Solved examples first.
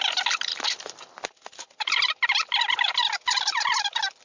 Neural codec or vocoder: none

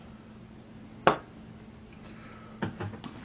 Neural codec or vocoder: none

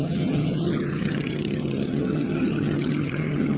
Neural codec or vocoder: vocoder, HiFi-GAN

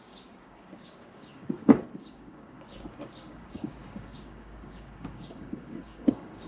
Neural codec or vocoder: codec, DAC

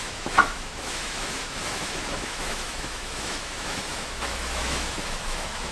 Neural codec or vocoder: autoencoder, DAC-VAE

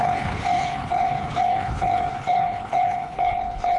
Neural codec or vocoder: codec, HILCodec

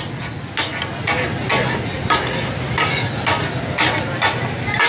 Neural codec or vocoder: none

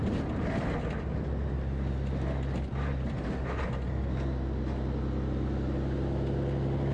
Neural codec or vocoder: none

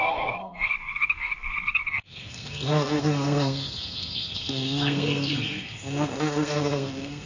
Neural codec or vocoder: codec, SNAC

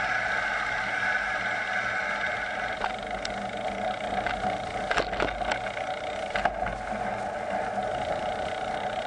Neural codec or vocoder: none